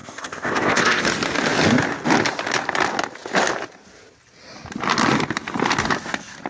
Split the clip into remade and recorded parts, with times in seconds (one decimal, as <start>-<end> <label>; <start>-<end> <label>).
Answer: 0.0-1.0 remade; 1.0-6.5 recorded